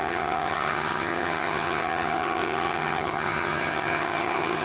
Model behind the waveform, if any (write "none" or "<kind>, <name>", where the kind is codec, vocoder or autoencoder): vocoder, HiFi-GAN